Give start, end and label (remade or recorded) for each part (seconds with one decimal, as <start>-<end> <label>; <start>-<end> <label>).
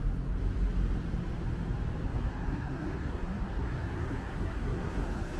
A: 0.0-2.1 recorded; 2.1-5.4 remade